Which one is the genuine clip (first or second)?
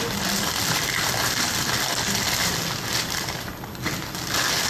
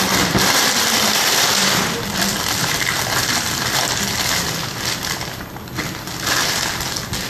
second